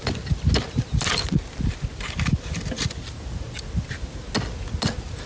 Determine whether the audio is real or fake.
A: real